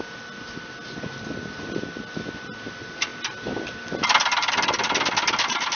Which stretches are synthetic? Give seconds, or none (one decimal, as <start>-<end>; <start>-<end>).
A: none